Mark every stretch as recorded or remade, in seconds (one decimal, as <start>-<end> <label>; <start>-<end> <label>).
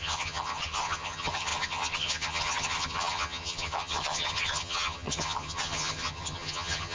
0.0-6.9 remade